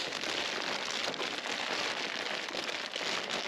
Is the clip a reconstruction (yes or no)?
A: no